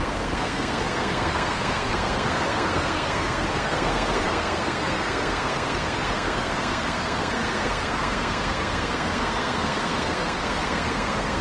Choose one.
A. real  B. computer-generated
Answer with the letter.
B